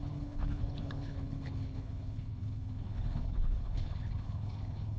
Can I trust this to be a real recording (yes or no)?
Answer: no